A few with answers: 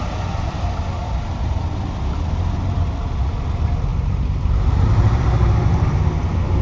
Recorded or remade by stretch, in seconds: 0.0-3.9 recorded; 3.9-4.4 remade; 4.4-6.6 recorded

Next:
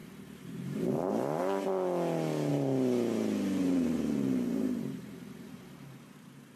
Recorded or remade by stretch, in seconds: 0.0-1.4 remade; 1.4-2.5 recorded; 2.5-6.6 remade

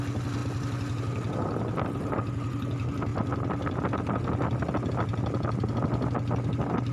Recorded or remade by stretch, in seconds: 0.0-6.9 recorded

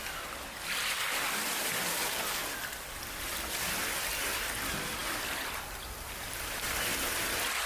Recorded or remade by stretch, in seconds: 0.0-0.8 recorded; 0.8-1.8 remade; 1.8-2.4 recorded; 2.4-3.6 remade; 3.6-6.9 recorded; 6.9-7.7 remade

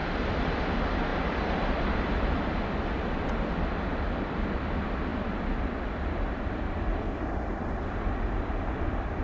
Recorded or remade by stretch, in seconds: 0.0-0.6 remade; 0.6-1.1 recorded; 1.1-2.3 remade; 2.3-5.1 recorded; 5.1-9.2 remade